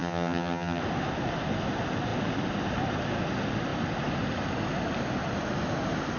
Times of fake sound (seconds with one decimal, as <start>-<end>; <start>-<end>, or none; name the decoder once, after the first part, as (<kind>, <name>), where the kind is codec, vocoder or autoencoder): 0.0-0.8 (vocoder, HiFi-GAN)

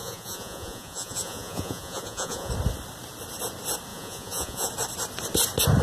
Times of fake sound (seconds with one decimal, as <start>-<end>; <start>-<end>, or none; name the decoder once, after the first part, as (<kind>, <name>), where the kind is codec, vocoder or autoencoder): 0.0-2.5 (vocoder, Vocos); 3.9-4.7

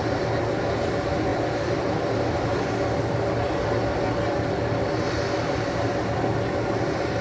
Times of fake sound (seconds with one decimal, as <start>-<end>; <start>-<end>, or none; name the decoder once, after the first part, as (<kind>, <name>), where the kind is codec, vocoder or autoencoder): none

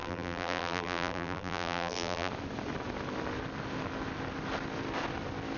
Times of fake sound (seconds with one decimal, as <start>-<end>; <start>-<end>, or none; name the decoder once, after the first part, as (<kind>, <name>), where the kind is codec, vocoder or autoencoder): 0.0-2.3 (vocoder, BigVGAN v2)

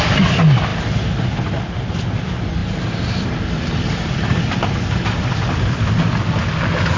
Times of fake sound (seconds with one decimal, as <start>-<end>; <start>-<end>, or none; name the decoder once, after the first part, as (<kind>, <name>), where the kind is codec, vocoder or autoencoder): none